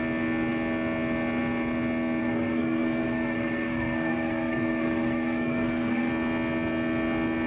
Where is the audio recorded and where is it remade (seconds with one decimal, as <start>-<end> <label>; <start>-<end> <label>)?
0.0-2.2 recorded; 2.2-6.1 remade; 6.1-7.5 recorded